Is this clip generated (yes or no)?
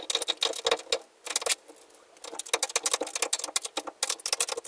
no